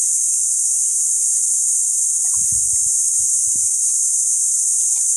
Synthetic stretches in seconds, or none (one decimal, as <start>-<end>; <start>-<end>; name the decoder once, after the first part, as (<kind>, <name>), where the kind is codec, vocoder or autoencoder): 1.1-2.0 (vocoder, BigVGAN v2); 2.5-3.2